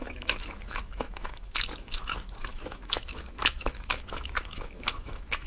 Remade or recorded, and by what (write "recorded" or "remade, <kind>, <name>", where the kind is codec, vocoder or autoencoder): remade, autoencoder, DAC-VAE